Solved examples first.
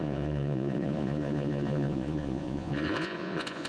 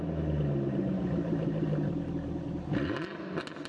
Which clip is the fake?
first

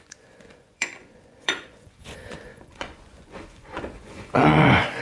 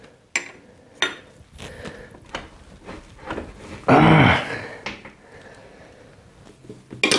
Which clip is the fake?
first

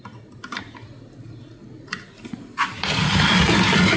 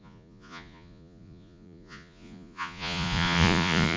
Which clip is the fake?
second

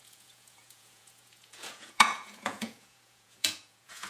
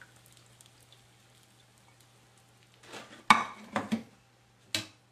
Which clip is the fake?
first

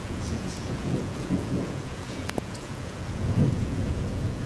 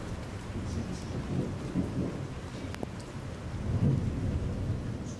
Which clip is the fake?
first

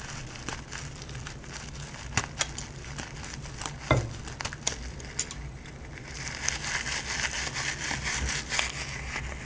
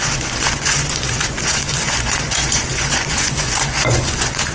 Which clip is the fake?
second